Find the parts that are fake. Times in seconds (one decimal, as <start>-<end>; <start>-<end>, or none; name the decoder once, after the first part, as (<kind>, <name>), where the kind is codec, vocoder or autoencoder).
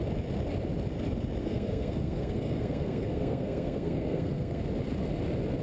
1.4-4.6 (codec, SNAC)